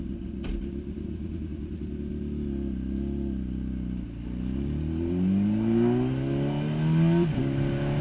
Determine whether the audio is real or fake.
real